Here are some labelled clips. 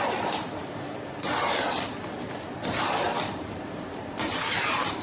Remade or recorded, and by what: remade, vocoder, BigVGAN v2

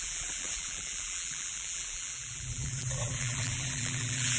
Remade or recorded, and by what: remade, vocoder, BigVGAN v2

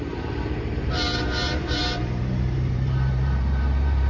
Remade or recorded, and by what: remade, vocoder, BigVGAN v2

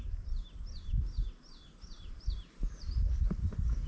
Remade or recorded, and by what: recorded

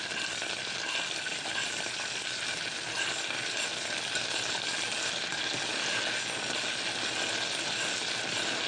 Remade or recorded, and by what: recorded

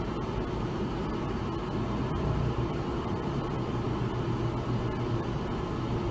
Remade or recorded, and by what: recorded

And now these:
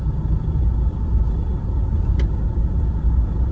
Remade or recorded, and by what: remade, vocoder, BigVGAN v2